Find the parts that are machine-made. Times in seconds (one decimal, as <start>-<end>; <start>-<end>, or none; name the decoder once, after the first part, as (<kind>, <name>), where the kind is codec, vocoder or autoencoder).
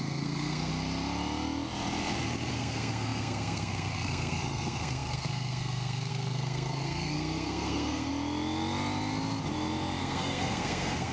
0.0-0.7 (codec, SNAC); 2.5-8.1; 10.0-11.1